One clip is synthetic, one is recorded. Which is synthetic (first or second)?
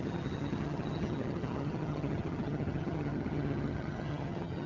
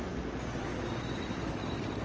first